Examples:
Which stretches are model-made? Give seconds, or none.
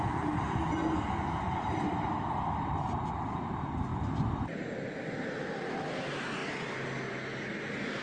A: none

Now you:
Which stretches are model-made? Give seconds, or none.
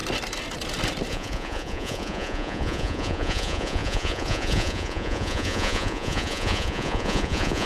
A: 1.1-7.7 (vocoder, Vocos)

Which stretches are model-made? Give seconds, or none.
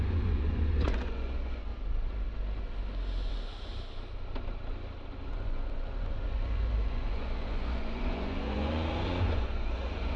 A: 0.0-1.7 (vocoder, Vocos); 5.3-10.2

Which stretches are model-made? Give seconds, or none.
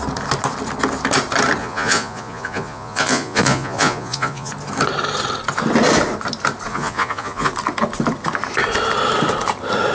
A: 1.6-4.5 (vocoder, Vocos); 6.7-7.5